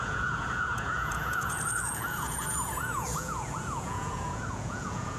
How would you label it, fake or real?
fake